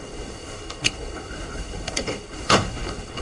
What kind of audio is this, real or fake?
fake